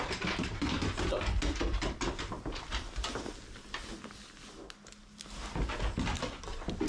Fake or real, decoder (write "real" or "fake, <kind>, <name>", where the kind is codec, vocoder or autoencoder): real